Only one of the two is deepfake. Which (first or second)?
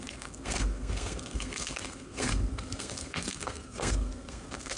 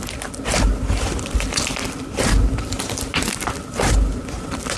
first